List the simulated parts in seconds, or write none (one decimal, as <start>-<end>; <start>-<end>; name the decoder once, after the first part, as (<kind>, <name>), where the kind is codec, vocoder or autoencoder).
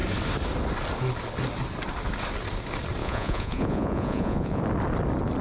3.0-4.6 (vocoder, Vocos)